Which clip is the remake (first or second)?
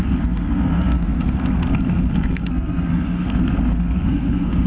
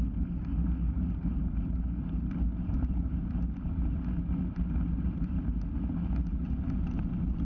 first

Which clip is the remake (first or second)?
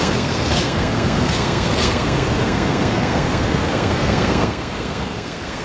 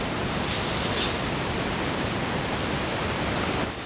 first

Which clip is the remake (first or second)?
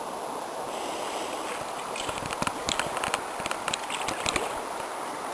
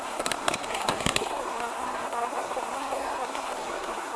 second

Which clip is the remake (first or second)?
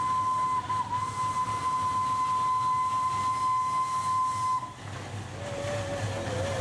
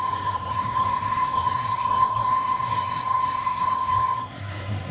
second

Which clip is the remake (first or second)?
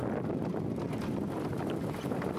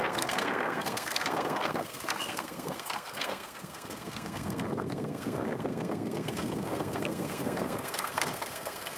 second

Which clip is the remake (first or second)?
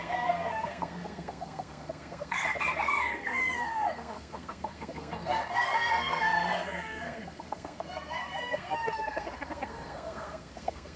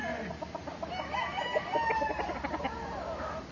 first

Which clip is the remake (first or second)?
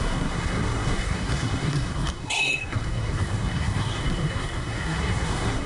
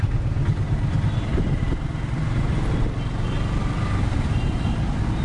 first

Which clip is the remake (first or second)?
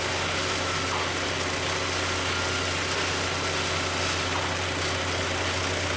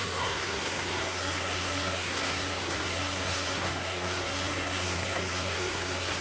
second